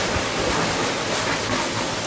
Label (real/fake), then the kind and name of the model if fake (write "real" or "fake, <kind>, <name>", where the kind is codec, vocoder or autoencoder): real